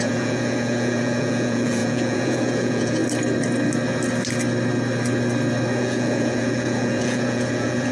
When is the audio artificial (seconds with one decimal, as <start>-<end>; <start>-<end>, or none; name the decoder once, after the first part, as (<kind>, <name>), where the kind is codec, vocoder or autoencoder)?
0.0-3.0 (vocoder, Vocos); 5.8-7.9